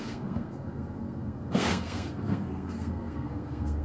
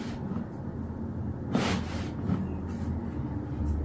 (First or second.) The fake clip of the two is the first